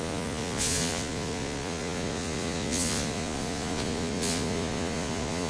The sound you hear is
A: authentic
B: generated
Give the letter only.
B